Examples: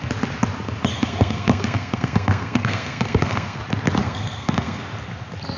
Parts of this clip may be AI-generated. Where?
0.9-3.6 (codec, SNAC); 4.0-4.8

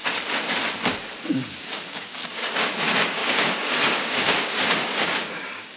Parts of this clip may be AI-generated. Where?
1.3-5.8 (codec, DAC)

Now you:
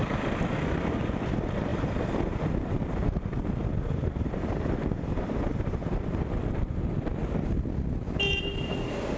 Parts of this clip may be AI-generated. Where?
1.7-6.2 (vocoder, BigVGAN v2)

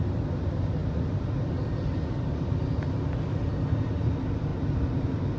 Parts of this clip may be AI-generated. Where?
4.5-5.4 (vocoder, BigVGAN v2)

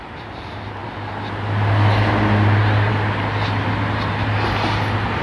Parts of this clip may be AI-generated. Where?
none